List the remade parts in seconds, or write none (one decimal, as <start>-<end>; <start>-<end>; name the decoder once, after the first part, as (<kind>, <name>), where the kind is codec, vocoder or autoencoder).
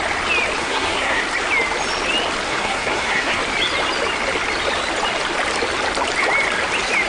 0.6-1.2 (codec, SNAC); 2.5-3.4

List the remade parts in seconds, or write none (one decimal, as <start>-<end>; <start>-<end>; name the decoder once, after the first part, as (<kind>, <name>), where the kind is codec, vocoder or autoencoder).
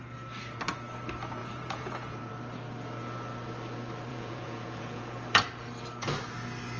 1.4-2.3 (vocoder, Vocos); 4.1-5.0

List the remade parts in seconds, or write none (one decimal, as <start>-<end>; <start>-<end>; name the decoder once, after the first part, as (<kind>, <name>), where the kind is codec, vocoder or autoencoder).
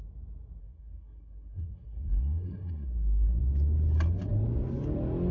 0.6-3.4 (codec, SNAC)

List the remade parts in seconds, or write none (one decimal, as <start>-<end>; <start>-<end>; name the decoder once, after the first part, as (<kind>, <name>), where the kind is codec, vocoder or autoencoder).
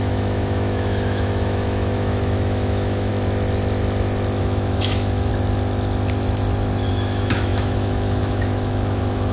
0.0-3.1 (autoencoder, DAC-VAE); 4.4-5.3; 6.9-9.3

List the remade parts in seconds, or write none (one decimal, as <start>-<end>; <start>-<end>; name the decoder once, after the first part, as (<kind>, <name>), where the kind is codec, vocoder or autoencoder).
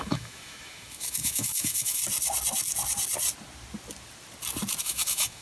0.0-2.0 (autoencoder, DAC-VAE); 4.8-5.4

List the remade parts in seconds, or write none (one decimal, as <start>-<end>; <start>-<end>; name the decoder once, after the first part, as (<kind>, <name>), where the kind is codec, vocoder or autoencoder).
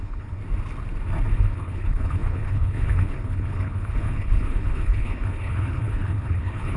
0.0-0.4 (codec, HILCodec); 1.4-6.8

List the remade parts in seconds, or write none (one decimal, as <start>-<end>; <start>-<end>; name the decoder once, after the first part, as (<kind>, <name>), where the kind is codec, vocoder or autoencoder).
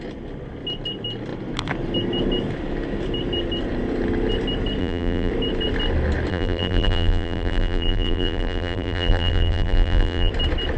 4.8-5.3 (vocoder, BigVGAN v2); 6.3-10.3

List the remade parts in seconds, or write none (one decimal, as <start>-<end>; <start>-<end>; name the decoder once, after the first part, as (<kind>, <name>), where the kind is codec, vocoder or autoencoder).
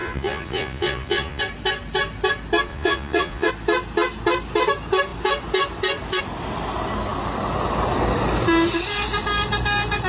0.0-1.4 (vocoder, Vocos); 2.7-3.5